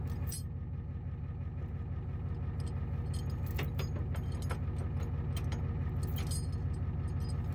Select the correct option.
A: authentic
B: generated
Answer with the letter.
A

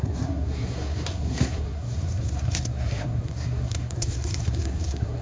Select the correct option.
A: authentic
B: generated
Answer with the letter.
B